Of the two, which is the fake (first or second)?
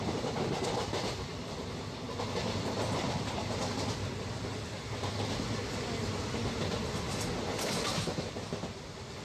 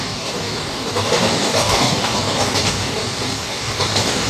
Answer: second